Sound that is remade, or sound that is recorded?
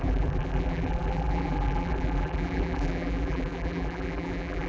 remade